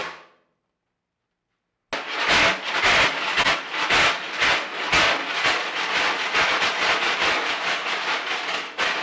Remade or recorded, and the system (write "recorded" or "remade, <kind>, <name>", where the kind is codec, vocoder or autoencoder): recorded